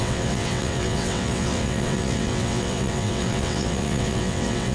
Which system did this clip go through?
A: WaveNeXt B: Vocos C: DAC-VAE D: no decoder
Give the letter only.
A